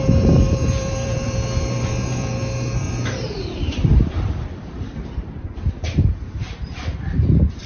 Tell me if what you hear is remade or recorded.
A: remade